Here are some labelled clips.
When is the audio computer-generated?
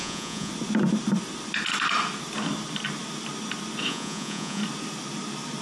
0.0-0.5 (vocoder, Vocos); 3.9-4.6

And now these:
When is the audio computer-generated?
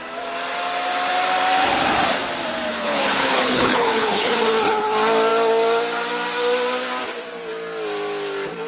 2.7-4.3 (codec, HILCodec)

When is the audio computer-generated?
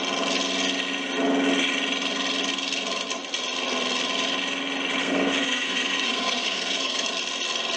5.0-7.1 (codec, SNAC)